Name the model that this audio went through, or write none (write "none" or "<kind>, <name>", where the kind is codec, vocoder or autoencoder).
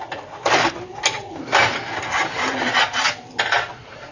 none